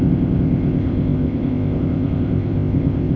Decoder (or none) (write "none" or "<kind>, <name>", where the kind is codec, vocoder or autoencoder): codec, ZipCodec